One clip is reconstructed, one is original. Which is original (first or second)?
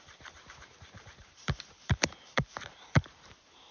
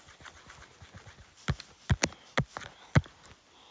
second